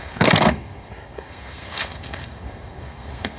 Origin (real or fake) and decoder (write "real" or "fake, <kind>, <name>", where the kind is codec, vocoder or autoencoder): fake, codec, SNAC